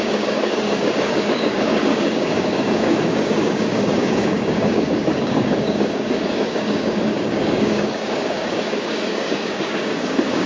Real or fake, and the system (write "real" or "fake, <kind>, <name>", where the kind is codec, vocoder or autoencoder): fake, codec, DAC